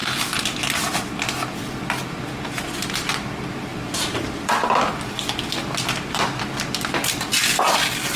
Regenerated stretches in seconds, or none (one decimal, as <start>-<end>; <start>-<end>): 3.7-4.8